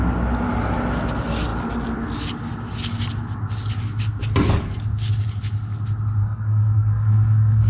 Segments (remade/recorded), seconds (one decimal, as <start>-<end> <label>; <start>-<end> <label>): 0.0-6.2 recorded; 6.2-7.7 remade